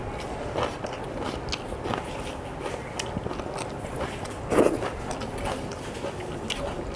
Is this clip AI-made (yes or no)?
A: no